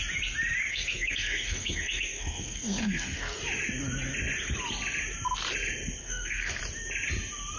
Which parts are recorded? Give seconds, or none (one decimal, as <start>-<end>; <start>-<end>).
0.0-0.7; 3.4-6.0; 6.6-7.6